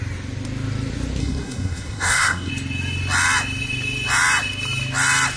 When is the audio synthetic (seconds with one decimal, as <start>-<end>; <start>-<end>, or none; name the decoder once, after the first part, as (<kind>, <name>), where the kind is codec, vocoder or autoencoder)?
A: 1.2-2.5 (codec, SNAC)